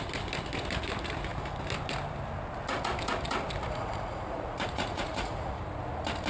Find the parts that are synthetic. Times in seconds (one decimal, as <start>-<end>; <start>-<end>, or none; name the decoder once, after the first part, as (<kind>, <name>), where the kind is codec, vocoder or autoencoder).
3.6-5.6 (vocoder, Vocos)